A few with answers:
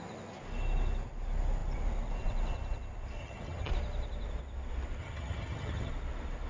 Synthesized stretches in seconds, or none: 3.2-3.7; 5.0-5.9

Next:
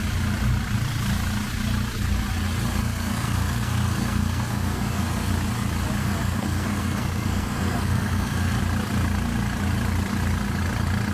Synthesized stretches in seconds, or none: 2.8-5.3; 6.0-8.6